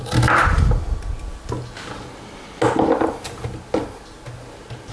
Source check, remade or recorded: recorded